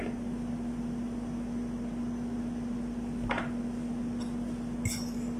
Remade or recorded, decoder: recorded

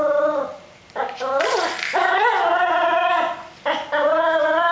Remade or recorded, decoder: recorded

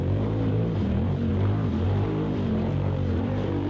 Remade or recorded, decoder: remade, vocoder, BigVGAN v2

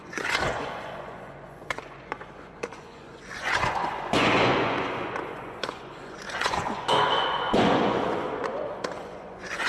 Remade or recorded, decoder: remade, vocoder, Vocos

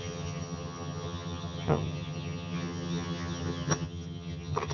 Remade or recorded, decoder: remade, vocoder, HiFi-GAN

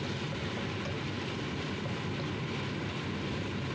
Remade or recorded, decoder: recorded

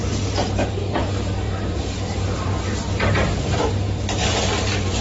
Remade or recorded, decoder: remade, vocoder, BigVGAN v2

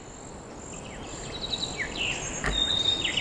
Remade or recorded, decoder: recorded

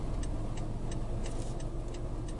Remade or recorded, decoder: recorded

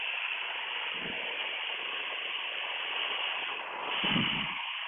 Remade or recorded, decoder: recorded